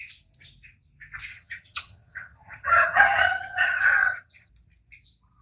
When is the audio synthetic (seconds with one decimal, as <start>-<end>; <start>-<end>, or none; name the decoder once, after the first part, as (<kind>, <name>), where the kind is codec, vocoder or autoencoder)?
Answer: 1.3-4.5 (vocoder, HiFi-GAN)